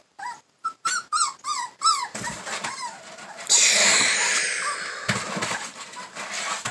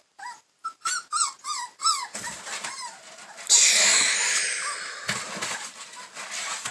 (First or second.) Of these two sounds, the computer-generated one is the first